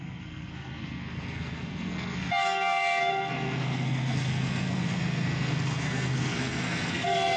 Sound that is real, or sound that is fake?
fake